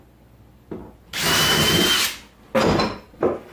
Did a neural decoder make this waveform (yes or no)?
no